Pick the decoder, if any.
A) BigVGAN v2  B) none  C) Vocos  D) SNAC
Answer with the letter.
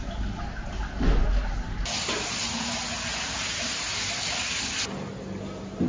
B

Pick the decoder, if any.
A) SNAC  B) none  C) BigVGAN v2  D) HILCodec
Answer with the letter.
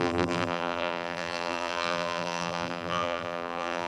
C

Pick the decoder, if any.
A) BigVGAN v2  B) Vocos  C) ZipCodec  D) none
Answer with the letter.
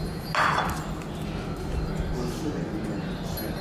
D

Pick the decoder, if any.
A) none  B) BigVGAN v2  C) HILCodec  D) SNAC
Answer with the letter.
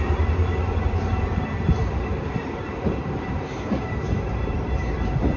B